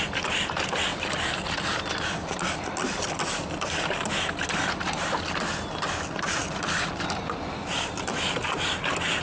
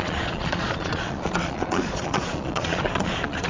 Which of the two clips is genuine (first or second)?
first